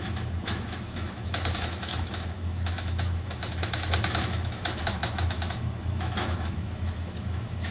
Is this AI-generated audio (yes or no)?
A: yes